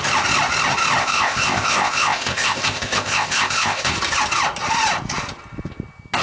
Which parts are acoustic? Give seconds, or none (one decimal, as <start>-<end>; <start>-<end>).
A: 0.0-1.0; 3.9-6.2